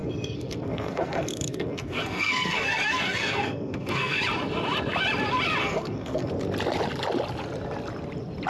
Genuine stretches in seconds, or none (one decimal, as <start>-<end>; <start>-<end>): 4.2-5.6; 6.3-8.5